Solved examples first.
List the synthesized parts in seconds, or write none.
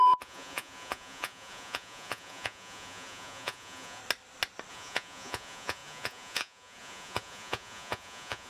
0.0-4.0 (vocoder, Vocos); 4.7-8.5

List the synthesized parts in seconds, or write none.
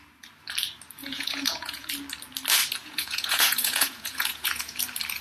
1.0-1.9 (vocoder, Vocos); 2.8-4.8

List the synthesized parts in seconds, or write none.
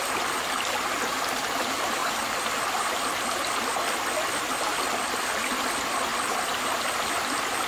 2.0-3.7 (vocoder, BigVGAN v2)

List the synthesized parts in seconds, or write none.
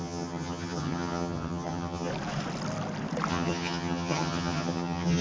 0.0-2.1 (vocoder, HiFi-GAN); 3.3-5.2